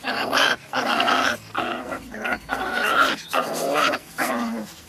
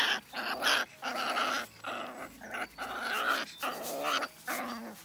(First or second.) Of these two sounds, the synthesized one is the first